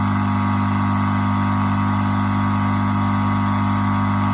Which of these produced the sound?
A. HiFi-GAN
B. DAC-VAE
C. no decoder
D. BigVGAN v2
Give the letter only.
C